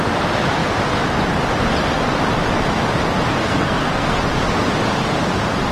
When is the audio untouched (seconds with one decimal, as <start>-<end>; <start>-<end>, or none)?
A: 0.0-3.4; 4.2-5.7